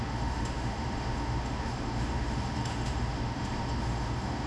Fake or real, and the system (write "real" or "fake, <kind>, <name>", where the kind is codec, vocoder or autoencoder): fake, autoencoder, DAC-VAE